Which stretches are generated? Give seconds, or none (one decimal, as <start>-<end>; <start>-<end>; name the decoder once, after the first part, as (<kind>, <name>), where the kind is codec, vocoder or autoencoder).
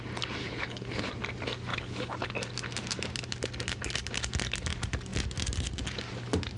0.4-1.1 (codec, HILCodec); 1.7-2.3